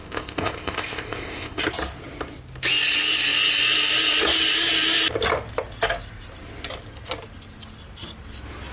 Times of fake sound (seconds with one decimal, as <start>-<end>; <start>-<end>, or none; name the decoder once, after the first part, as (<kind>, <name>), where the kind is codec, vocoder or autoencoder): 0.0-1.6 (codec, ZipCodec)